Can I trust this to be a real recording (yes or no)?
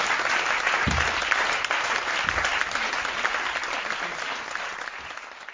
yes